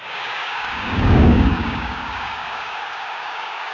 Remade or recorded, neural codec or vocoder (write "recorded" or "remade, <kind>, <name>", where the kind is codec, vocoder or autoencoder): remade, codec, DAC